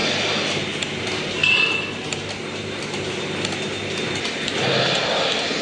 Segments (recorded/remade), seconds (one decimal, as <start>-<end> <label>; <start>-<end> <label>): 0.0-5.6 recorded